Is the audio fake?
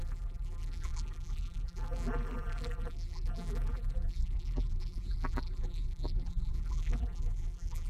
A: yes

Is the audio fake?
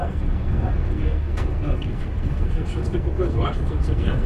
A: yes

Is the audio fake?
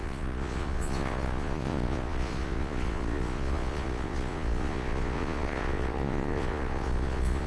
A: yes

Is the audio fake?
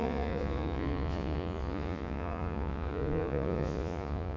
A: yes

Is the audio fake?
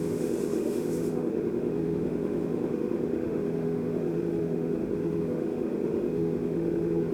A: yes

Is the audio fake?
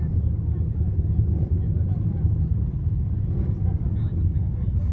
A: no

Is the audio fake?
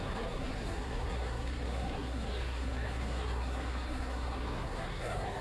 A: yes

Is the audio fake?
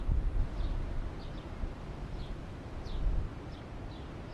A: no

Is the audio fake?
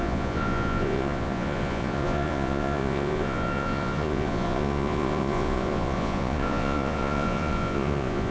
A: yes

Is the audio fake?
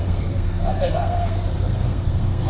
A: yes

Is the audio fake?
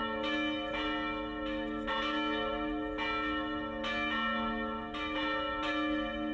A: no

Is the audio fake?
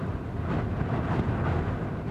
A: no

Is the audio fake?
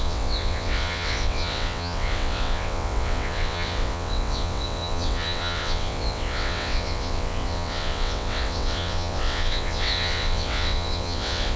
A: yes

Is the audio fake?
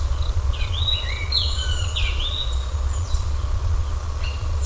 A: yes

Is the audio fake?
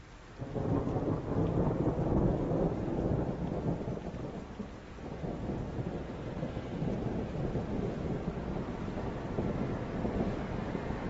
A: no